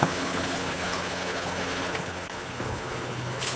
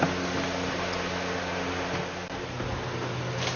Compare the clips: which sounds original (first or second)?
second